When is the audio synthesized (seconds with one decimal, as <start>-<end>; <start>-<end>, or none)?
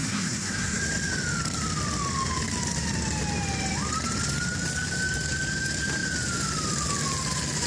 0.0-0.8